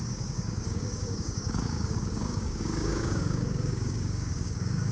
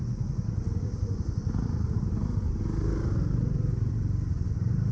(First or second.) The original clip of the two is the second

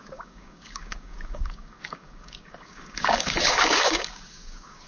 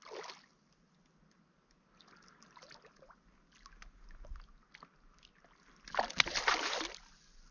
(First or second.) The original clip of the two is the second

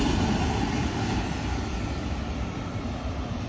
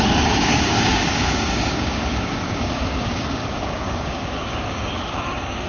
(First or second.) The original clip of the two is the first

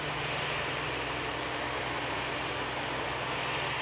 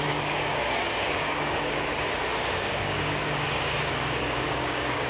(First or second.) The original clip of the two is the first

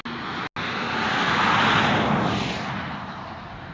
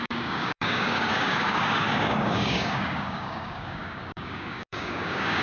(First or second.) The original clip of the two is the first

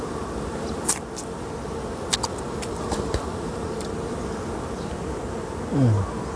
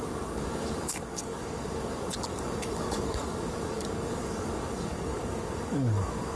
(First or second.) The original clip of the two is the first